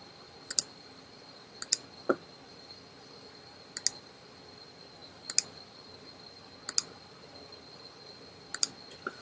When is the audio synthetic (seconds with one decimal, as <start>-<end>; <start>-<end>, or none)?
none